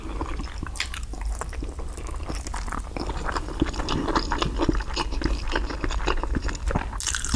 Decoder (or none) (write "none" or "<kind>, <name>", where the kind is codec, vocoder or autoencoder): none